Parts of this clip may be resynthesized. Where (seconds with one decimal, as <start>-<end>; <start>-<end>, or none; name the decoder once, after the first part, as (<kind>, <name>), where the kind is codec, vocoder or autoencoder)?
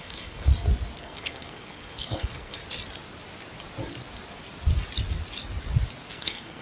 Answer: 0.0-0.5 (codec, SNAC); 1.0-2.6; 6.1-6.6